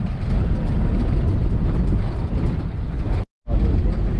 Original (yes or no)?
yes